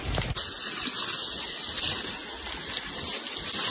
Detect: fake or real real